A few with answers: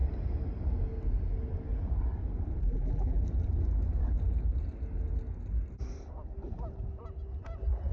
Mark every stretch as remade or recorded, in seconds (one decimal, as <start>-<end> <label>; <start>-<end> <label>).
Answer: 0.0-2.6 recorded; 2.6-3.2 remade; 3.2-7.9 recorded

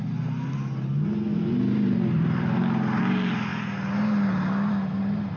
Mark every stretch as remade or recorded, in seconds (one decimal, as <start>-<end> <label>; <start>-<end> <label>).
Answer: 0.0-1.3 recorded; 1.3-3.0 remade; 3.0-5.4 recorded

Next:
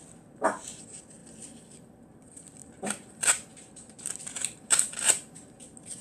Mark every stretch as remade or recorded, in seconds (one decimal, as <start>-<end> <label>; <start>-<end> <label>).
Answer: 0.0-2.6 recorded; 2.6-5.5 remade; 5.5-6.0 recorded

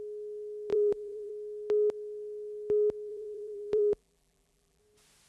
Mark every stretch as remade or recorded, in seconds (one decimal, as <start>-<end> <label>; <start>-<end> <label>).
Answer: 0.0-0.7 recorded; 0.7-1.3 remade; 1.3-3.1 recorded; 3.1-4.8 remade; 4.8-5.3 recorded

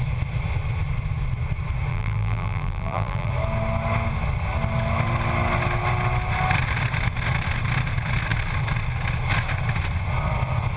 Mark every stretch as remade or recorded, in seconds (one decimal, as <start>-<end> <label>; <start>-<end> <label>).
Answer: 0.0-1.9 recorded; 1.9-3.3 remade; 3.3-10.8 recorded

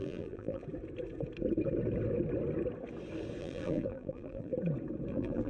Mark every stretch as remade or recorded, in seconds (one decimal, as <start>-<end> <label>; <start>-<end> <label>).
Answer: 0.0-0.6 remade; 0.6-3.4 recorded; 3.4-4.5 remade; 4.5-5.1 recorded; 5.1-5.5 remade